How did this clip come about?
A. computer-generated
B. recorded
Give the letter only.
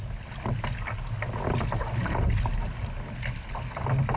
B